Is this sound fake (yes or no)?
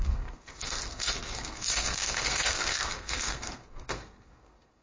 yes